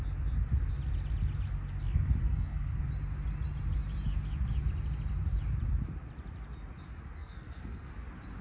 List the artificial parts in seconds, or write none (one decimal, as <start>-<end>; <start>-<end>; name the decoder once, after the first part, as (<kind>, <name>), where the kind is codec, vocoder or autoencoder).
2.2-2.8 (codec, SNAC); 7.2-7.9